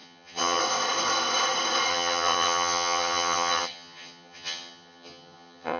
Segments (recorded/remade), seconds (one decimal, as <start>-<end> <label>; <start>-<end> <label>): 0.0-0.6 remade; 0.6-1.9 recorded; 1.9-5.8 remade